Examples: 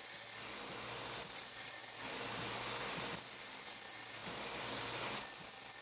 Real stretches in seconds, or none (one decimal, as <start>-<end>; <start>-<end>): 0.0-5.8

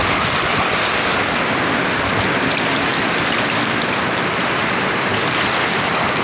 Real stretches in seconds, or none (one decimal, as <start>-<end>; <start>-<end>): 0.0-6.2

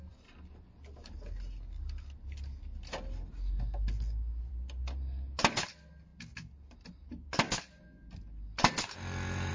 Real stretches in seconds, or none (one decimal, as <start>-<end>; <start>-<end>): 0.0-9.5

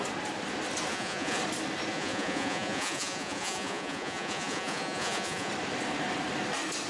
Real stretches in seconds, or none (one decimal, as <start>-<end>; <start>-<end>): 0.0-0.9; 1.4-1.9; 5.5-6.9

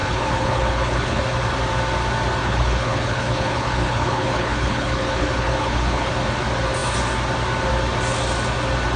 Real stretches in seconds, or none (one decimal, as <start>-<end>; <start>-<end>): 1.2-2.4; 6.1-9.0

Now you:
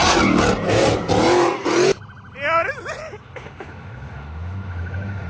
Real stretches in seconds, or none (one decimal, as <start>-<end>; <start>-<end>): 0.0-3.2